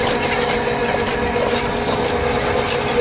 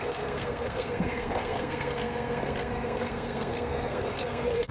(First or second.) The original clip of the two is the first